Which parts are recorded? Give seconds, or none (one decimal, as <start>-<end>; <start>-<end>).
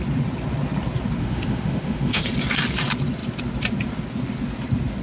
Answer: 0.0-1.2; 2.2-5.0